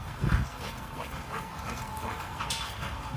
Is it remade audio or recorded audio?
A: remade